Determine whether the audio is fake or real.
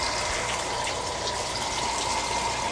real